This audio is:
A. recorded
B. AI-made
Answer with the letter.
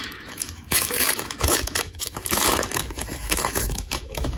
B